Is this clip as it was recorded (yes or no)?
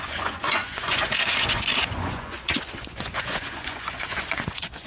no